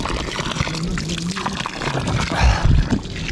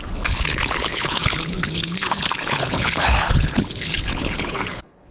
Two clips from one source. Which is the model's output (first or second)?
second